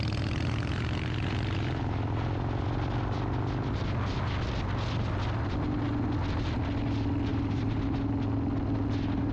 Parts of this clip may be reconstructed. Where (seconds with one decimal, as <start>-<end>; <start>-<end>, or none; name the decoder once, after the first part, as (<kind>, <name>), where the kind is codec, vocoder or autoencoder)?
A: 7.3-7.8 (vocoder, BigVGAN v2)